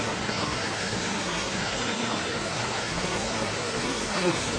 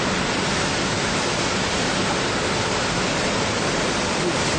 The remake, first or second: first